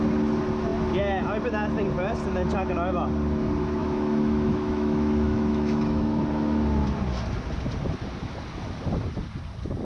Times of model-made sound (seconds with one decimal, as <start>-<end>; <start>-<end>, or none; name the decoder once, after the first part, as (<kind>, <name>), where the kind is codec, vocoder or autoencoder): 3.8-6.2 (autoencoder, DAC-VAE)